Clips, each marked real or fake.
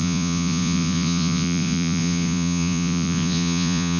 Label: fake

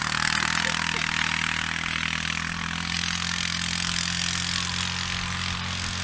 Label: real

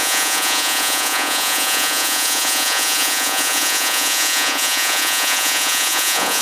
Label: fake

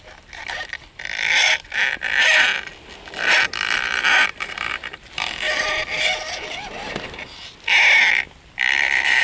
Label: real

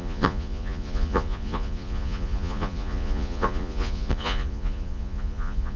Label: fake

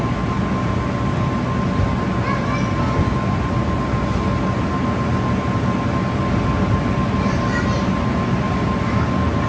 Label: real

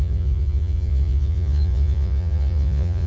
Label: fake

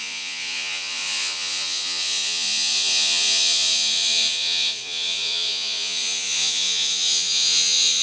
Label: fake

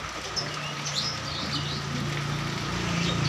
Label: real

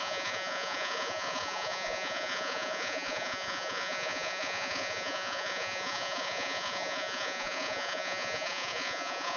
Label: fake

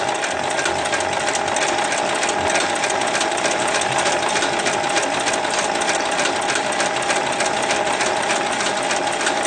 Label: real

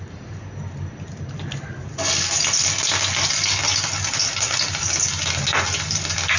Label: real